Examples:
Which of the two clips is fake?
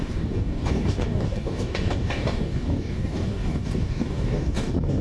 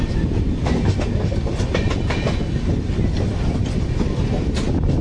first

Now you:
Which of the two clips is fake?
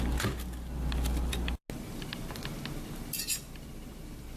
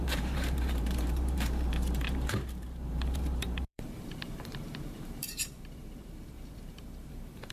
second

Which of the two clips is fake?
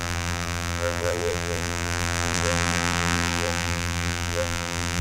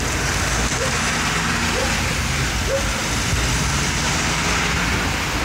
first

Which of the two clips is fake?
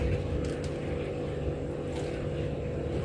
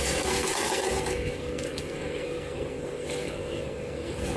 second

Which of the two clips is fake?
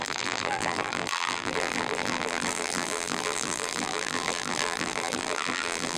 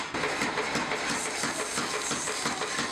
first